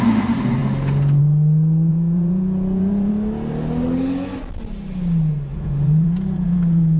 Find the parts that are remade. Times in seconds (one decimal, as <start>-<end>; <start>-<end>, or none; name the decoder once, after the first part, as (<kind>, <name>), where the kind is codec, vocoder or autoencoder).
1.9-3.1 (vocoder, Vocos); 5.5-7.0